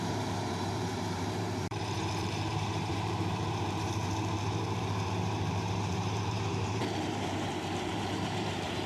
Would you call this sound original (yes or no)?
no